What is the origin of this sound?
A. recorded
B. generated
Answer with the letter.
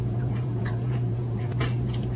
B